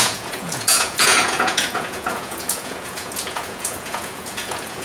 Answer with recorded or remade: remade